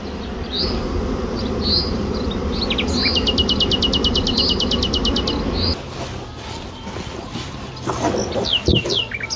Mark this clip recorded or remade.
recorded